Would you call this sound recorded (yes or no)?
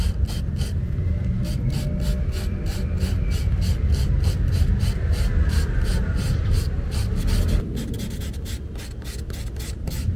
yes